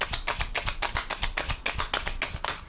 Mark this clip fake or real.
real